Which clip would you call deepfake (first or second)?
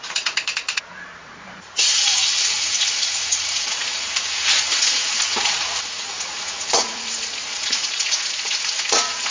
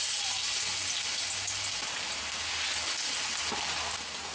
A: first